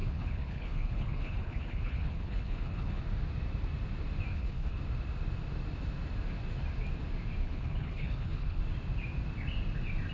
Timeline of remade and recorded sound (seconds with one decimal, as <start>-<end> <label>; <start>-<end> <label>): 0.0-3.0 remade; 3.0-4.3 recorded; 4.3-4.8 remade; 4.8-7.4 recorded; 7.4-8.6 remade; 8.6-10.1 recorded